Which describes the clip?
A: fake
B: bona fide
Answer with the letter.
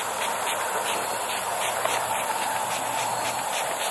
B